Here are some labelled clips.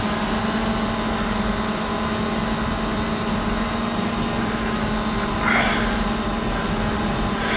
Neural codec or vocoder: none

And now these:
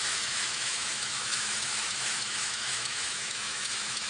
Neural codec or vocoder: autoencoder, DAC-VAE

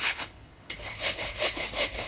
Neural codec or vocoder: codec, HILCodec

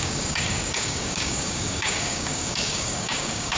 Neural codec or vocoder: codec, DAC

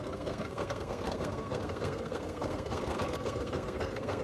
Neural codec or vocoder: codec, SNAC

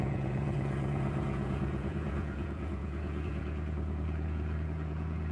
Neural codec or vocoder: vocoder, Vocos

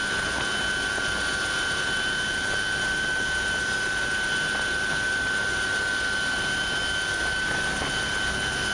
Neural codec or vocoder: none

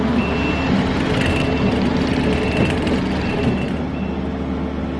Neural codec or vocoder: none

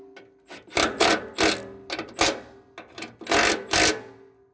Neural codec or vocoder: none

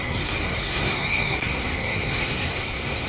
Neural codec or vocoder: codec, SNAC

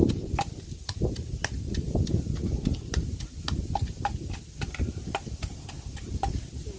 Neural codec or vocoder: none